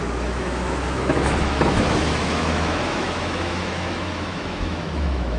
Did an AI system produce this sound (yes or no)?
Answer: yes